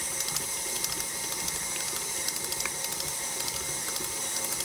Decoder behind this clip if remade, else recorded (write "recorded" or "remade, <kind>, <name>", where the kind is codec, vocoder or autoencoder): recorded